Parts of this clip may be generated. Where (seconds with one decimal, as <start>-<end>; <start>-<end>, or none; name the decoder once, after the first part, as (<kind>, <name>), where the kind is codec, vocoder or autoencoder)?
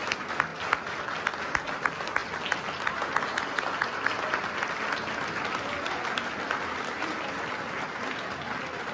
none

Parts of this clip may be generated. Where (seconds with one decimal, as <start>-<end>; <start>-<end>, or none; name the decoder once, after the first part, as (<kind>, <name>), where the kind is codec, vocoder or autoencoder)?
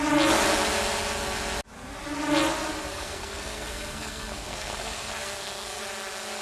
2.9-5.8 (codec, SNAC)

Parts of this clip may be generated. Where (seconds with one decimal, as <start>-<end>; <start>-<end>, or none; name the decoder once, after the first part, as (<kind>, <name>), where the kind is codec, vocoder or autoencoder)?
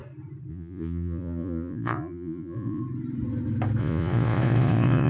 0.5-2.8 (vocoder, Vocos); 3.8-5.1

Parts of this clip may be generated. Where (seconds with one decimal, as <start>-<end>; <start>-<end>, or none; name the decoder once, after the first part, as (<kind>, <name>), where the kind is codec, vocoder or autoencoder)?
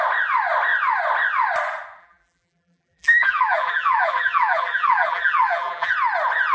2.0-5.9 (vocoder, BigVGAN v2)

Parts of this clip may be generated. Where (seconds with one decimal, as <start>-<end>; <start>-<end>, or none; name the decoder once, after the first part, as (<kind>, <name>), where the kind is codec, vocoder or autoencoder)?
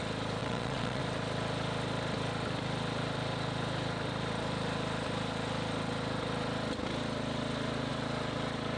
0.4-1.0 (vocoder, WaveNeXt)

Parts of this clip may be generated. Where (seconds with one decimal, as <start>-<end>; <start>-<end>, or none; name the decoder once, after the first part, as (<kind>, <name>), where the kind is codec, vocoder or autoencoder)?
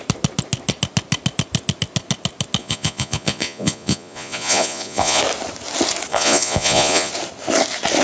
2.6-5.2 (vocoder, Vocos); 6.1-7.1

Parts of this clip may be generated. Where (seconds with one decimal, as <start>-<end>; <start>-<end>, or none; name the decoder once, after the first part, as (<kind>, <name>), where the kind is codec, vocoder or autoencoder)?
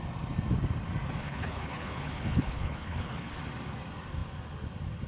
1.2-3.4 (codec, HILCodec)